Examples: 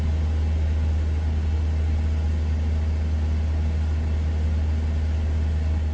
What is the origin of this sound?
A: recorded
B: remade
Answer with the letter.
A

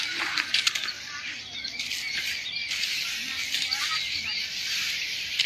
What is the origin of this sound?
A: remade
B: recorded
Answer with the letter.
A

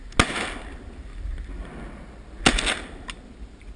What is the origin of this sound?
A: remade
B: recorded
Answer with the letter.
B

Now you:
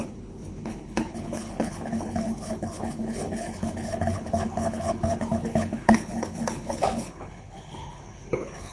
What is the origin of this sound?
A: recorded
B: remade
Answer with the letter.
B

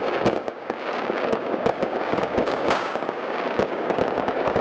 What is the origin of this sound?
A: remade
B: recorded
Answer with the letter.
A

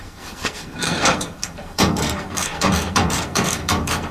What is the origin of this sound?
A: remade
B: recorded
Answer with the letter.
A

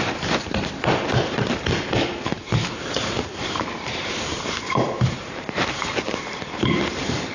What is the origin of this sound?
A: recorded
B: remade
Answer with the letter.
B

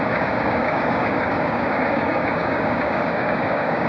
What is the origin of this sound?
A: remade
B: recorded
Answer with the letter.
A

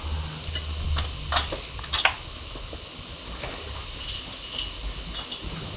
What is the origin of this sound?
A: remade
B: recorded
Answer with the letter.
B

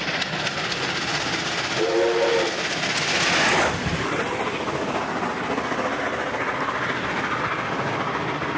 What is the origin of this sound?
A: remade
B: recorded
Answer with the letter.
B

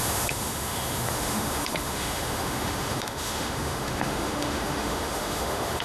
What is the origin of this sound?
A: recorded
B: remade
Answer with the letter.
B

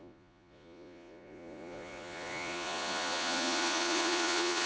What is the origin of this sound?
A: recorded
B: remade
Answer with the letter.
B